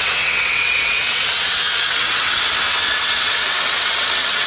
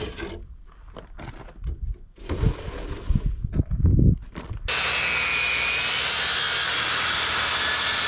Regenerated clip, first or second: first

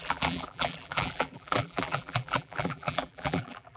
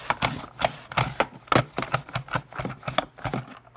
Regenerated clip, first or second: first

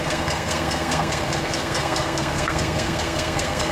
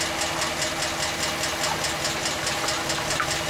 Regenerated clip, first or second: first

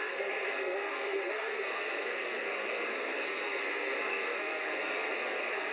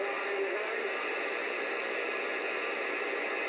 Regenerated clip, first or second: first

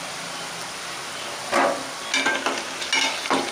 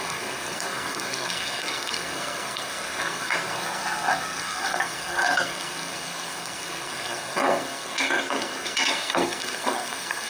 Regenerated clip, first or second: second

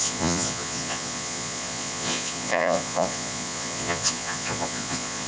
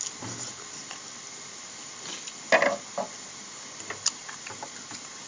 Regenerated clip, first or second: first